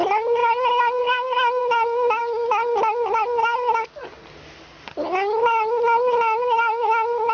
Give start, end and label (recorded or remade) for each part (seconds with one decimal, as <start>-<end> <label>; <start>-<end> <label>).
0.0-7.3 recorded